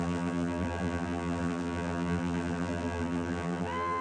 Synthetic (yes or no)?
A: yes